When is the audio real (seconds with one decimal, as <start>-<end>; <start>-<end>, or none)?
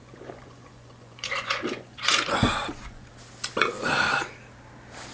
3.1-5.1